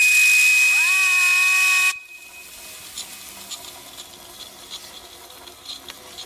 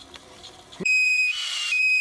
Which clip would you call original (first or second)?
first